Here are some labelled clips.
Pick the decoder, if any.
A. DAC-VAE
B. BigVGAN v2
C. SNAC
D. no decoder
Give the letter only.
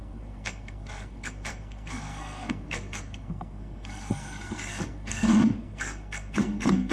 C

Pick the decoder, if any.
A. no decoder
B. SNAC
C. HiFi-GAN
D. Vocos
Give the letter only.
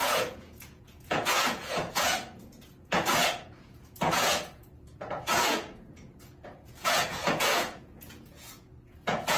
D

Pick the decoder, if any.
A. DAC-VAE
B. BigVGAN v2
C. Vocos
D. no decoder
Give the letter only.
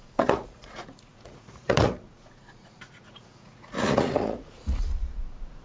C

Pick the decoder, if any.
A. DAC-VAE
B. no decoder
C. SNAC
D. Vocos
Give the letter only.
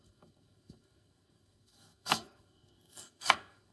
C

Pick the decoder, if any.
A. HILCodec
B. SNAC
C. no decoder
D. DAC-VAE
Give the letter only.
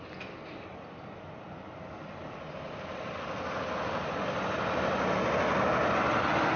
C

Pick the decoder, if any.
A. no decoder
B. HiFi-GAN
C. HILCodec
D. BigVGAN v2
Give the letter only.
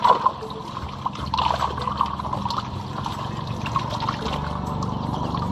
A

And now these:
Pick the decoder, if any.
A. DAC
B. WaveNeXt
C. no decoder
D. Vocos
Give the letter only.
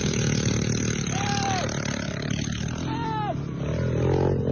C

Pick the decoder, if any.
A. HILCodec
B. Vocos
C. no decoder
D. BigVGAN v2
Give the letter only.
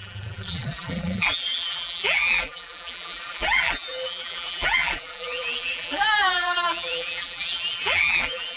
D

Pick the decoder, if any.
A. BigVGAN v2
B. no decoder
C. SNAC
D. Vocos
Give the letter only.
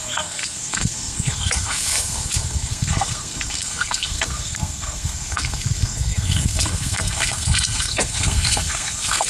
C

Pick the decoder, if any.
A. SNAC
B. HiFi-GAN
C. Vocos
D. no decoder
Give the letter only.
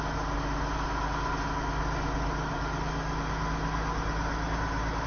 D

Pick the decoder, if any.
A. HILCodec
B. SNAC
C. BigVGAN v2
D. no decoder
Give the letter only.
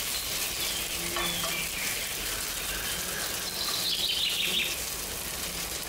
D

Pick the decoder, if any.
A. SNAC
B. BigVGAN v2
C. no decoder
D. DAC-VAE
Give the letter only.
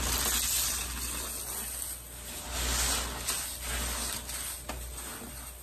C